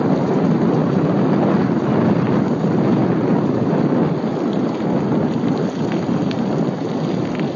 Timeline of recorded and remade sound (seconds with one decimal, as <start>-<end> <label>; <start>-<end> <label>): 0.0-7.6 recorded